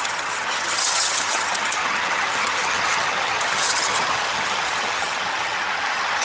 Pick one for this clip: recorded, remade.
remade